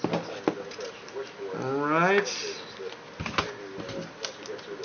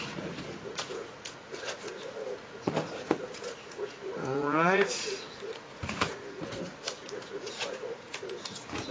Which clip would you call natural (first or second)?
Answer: first